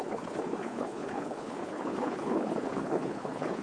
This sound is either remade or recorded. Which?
remade